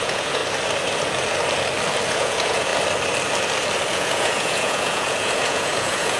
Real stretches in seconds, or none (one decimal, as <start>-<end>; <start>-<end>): 0.4-2.1; 2.7-3.9